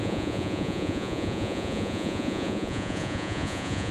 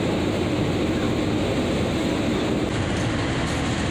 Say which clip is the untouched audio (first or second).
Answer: second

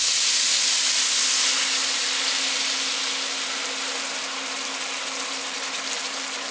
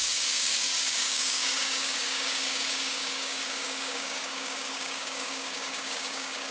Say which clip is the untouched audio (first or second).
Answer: first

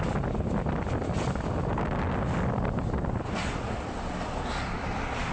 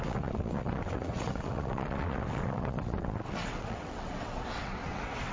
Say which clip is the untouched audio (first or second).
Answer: first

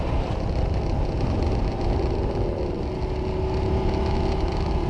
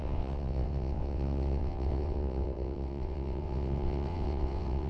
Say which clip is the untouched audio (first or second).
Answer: first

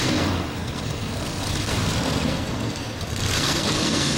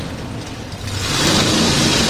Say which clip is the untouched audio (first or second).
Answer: second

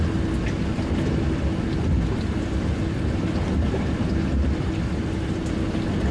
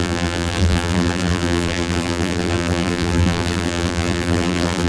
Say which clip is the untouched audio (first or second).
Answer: first